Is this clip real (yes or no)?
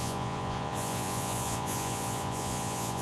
no